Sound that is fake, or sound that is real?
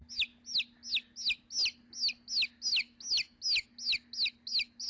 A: real